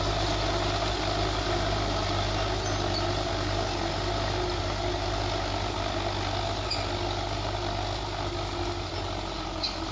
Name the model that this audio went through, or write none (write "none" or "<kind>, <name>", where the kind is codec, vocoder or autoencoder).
none